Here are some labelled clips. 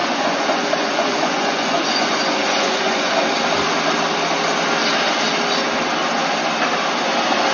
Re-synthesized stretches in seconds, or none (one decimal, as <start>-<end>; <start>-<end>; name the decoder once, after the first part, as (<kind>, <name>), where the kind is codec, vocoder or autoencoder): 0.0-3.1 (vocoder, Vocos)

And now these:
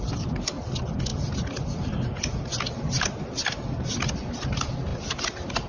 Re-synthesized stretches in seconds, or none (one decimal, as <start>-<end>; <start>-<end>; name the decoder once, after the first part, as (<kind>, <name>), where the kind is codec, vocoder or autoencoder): none

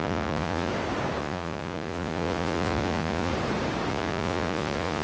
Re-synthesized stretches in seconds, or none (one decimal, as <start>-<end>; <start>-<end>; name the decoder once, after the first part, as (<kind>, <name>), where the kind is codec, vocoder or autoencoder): 0.0-0.7 (vocoder, Vocos); 1.2-3.3; 3.9-5.0

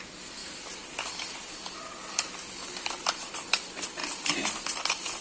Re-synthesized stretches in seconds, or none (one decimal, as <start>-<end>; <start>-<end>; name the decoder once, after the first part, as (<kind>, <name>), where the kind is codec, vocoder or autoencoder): none